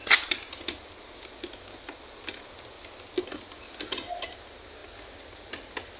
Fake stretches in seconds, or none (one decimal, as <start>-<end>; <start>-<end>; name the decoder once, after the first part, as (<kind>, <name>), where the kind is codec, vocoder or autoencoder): none